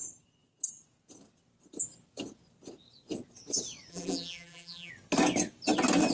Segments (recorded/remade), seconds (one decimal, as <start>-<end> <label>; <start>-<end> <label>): 0.0-3.9 recorded; 3.9-4.9 remade; 4.9-6.1 recorded